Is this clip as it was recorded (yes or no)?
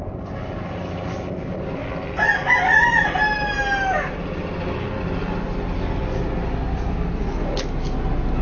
yes